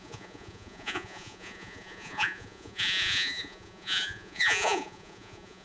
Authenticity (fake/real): fake